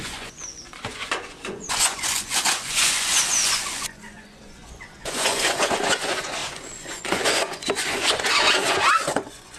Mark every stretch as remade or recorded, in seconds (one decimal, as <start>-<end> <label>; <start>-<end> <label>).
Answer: 0.0-9.6 remade